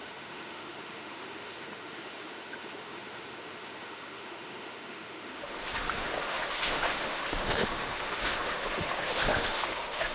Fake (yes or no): yes